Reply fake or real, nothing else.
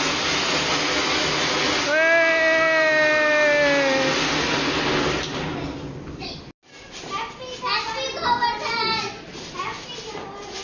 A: real